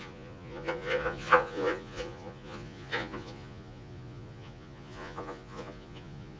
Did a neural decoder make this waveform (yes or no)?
yes